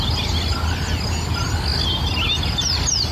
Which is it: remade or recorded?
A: recorded